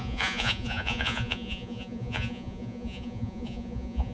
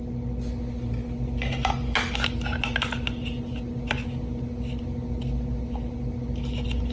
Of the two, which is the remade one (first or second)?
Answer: first